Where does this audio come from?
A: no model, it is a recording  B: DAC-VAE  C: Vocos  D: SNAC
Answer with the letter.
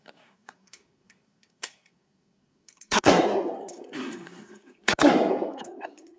D